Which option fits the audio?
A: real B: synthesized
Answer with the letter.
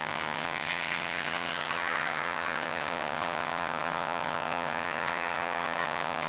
B